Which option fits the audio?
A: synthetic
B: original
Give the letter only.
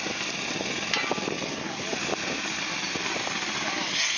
B